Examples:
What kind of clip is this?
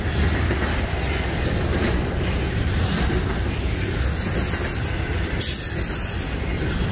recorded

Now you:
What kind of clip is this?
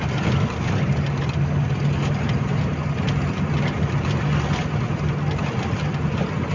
recorded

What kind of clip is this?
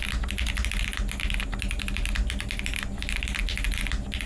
recorded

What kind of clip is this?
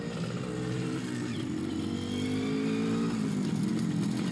recorded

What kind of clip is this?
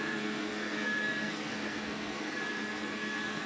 remade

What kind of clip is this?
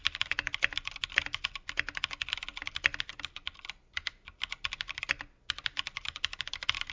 recorded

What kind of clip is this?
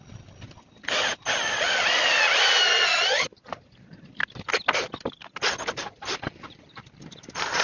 recorded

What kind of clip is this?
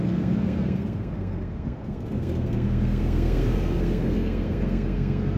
remade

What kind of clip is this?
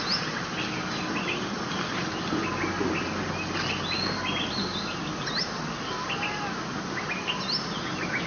recorded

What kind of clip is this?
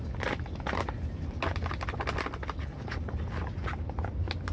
recorded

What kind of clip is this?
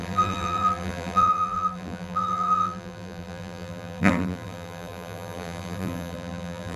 remade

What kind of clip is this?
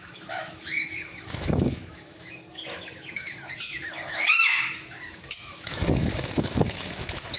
remade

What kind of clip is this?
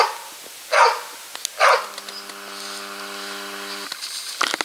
recorded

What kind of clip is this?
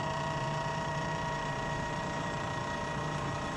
remade